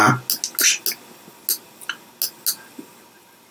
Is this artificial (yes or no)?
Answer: no